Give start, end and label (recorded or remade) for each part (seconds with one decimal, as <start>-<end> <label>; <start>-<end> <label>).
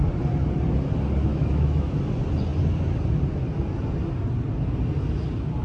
0.0-1.3 recorded; 1.3-2.0 remade; 2.0-5.6 recorded